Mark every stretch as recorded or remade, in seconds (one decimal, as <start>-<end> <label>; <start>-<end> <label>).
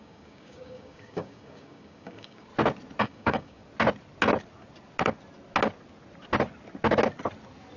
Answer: 0.0-2.5 remade; 2.5-3.0 recorded; 3.0-3.6 remade; 3.6-7.8 recorded